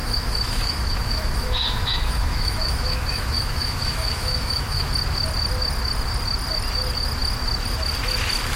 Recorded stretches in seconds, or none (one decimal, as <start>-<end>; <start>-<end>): 4.9-8.6